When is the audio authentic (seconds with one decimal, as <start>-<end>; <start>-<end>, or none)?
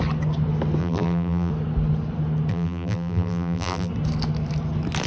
0.0-0.8; 1.5-2.5; 3.9-5.1